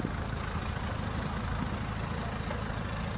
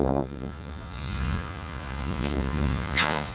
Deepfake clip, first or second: second